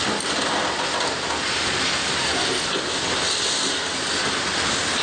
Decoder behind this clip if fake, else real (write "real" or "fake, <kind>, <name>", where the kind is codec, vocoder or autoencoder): real